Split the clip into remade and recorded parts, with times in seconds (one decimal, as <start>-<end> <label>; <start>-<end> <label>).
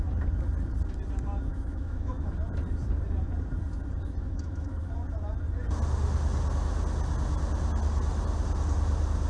0.0-1.5 recorded; 1.5-2.3 remade; 2.3-4.2 recorded; 4.2-4.9 remade; 4.9-9.3 recorded